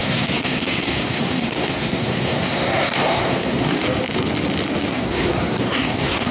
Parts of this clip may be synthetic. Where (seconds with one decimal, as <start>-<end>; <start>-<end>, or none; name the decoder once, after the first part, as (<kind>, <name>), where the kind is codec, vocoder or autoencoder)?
0.0-3.8 (codec, SNAC); 4.9-6.3